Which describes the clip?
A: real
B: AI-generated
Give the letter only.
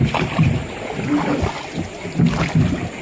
A